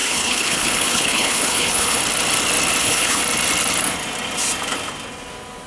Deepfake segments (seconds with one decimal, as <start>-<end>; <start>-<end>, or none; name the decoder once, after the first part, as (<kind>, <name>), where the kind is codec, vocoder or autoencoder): 0.0-2.0 (codec, HILCodec); 2.8-3.2